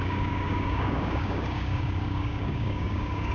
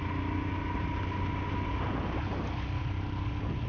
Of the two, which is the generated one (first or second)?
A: first